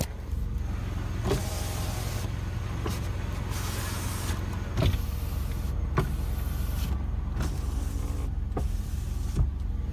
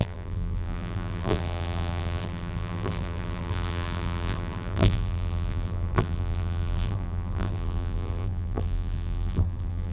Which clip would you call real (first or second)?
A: first